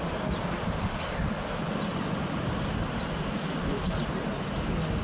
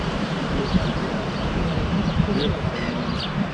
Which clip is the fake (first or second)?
second